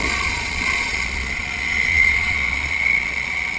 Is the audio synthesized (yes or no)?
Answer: yes